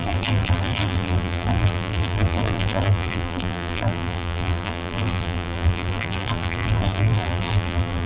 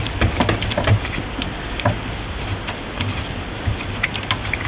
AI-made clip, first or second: first